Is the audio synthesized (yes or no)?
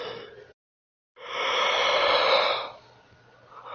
no